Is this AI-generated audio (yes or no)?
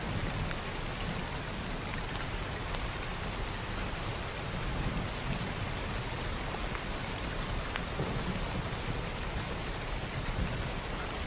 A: no